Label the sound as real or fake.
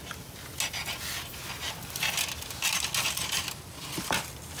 real